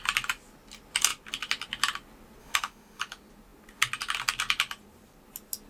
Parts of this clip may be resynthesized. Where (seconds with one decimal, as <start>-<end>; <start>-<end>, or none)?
2.4-3.0